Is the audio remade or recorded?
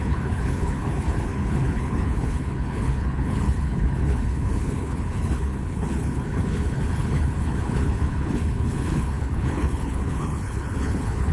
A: remade